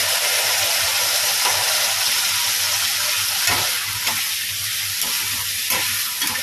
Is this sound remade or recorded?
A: recorded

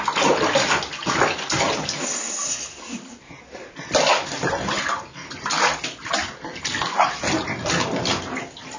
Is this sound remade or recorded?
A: recorded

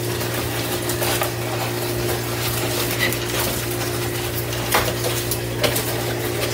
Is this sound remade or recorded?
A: recorded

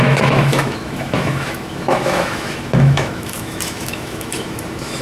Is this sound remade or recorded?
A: remade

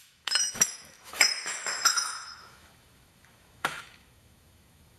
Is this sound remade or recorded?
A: remade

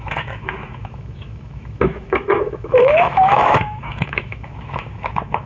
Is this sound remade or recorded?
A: remade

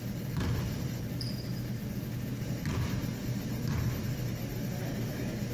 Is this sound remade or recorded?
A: recorded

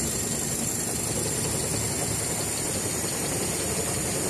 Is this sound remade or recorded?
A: recorded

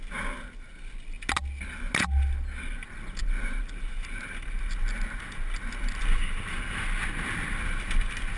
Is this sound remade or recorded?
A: recorded